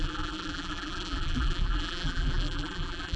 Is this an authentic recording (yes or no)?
no